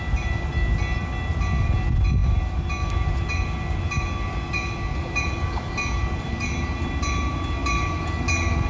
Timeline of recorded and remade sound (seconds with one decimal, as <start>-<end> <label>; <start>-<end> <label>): 0.0-8.7 recorded